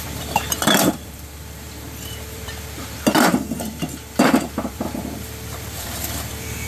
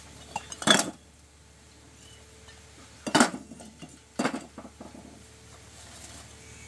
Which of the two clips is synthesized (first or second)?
first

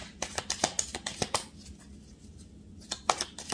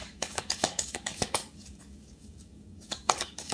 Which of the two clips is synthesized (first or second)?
second